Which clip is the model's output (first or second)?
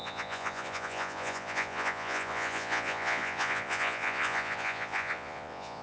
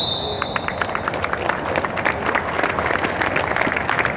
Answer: first